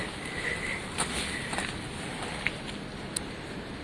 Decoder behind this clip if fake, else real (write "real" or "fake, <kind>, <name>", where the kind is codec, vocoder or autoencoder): real